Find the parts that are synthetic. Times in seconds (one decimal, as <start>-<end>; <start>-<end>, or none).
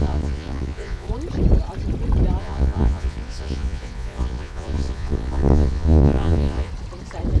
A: 0.0-1.1; 2.4-6.7